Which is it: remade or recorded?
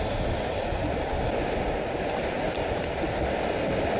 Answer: recorded